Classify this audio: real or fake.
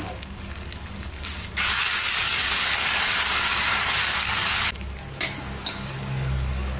fake